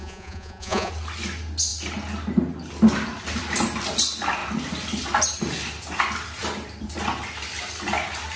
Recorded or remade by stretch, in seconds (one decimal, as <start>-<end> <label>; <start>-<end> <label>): 0.0-0.9 remade; 0.9-8.4 recorded